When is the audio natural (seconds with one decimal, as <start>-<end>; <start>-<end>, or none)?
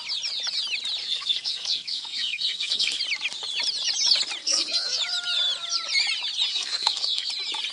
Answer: 0.0-1.0; 3.0-4.4; 5.0-6.5; 7.3-7.7